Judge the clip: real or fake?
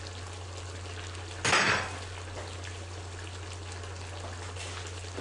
real